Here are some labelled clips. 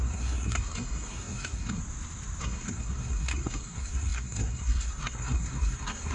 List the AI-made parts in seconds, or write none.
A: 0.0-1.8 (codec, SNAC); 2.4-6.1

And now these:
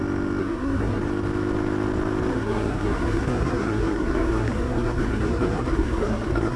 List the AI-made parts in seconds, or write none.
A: 0.4-1.0 (codec, SNAC); 2.3-6.6

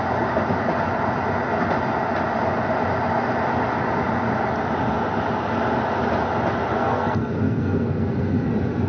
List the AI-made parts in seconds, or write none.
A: 6.7-8.5 (codec, SNAC)